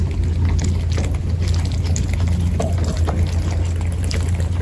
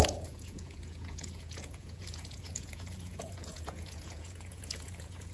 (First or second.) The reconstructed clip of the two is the second